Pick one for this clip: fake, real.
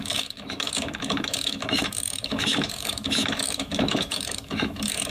fake